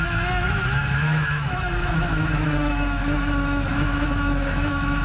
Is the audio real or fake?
fake